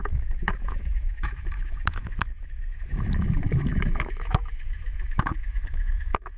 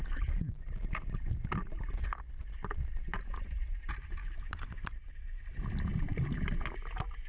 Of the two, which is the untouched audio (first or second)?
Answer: second